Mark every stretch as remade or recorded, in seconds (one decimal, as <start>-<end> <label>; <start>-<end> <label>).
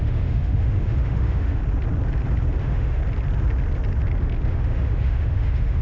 0.0-1.6 remade; 1.6-2.6 recorded; 2.6-3.0 remade; 3.0-4.5 recorded; 4.5-5.8 remade